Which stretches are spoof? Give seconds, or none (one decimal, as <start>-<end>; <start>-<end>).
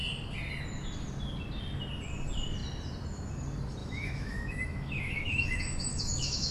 3.8-6.5